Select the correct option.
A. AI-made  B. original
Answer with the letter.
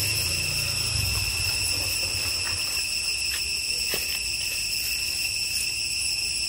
B